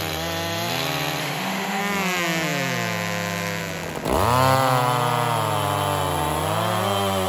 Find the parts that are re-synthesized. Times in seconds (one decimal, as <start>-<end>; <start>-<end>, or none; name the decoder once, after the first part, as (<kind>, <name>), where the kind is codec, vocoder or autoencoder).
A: 1.2-1.8 (autoencoder, DAC-VAE)